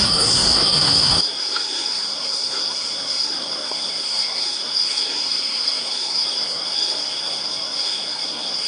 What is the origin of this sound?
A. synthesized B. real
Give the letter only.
A